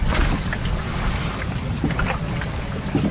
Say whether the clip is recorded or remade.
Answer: recorded